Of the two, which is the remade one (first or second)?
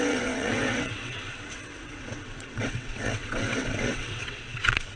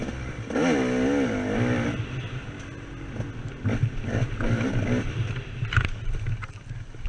first